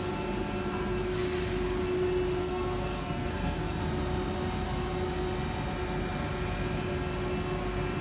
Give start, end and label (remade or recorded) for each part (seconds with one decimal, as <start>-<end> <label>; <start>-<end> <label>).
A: 0.0-2.4 recorded; 2.4-3.8 remade; 3.8-8.0 recorded